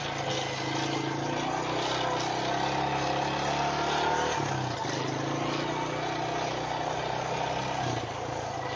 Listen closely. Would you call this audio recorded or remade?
recorded